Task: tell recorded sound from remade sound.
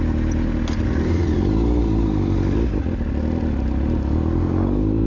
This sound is recorded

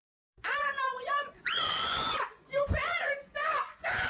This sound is remade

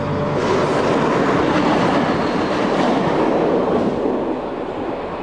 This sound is recorded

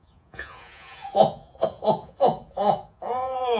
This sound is remade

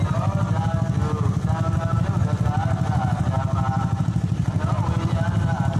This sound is recorded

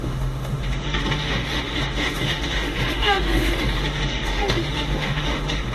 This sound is remade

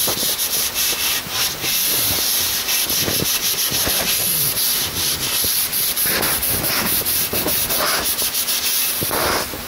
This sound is recorded